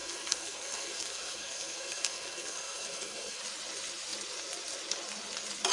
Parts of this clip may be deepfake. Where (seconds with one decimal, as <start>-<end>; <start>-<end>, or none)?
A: 0.0-3.4